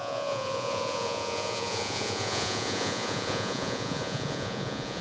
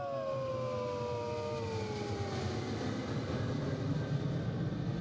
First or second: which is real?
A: second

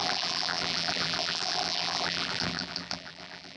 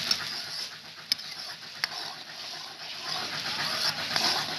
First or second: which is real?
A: second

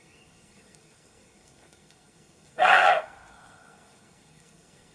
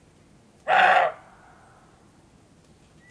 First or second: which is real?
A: second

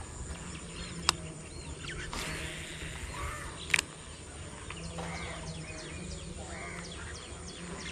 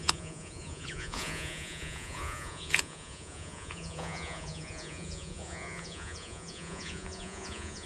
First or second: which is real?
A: first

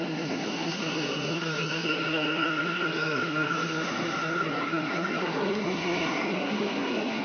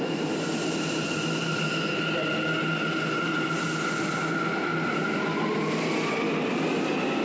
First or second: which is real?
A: second